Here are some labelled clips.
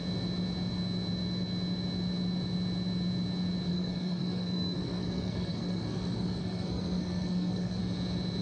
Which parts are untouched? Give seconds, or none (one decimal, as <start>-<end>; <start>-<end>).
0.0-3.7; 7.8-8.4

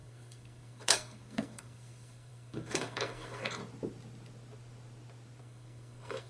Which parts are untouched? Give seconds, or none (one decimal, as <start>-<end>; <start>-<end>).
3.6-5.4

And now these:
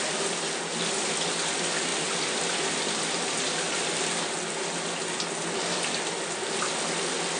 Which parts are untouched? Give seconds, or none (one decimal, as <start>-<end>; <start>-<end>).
0.0-7.4

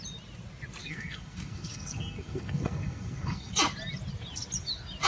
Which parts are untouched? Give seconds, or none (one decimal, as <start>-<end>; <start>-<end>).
0.0-0.8; 3.5-5.1

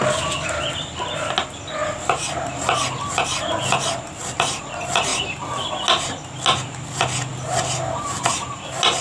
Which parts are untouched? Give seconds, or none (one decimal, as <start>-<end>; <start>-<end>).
0.0-9.0